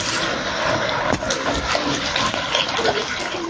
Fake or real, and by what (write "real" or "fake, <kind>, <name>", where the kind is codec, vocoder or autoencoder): real